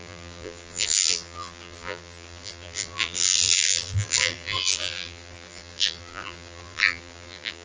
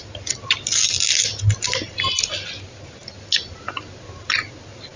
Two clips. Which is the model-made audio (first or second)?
first